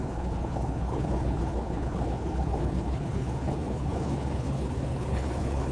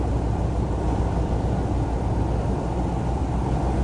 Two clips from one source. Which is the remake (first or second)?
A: first